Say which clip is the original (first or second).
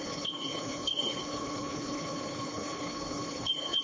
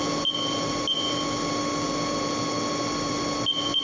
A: second